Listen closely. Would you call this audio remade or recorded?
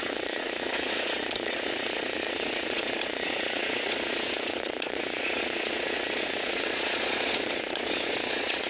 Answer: remade